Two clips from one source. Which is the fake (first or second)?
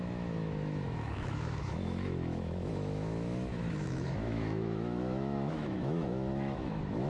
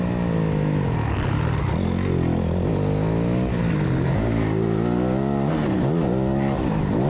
first